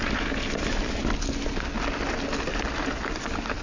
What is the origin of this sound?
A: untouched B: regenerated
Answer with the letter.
A